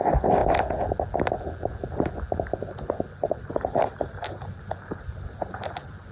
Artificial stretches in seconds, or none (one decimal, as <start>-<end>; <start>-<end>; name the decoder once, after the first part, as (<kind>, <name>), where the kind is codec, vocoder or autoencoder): none